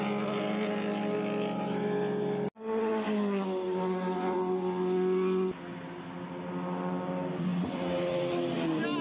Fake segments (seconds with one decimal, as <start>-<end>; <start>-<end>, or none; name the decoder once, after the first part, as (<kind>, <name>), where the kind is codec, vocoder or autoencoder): none